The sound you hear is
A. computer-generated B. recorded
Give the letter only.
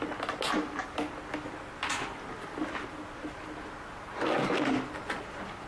B